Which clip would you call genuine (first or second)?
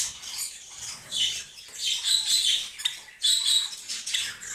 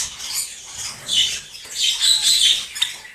second